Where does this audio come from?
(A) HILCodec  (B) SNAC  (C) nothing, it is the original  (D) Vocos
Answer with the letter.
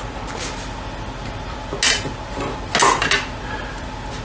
C